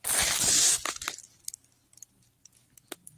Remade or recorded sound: recorded